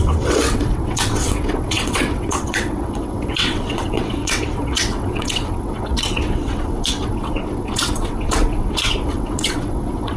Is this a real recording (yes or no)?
no